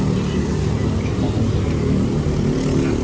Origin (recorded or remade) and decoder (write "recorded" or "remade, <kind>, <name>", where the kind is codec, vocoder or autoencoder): recorded